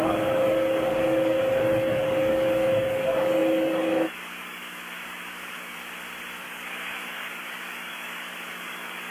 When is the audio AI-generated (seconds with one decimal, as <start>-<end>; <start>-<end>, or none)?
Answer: 0.0-5.8; 6.4-9.1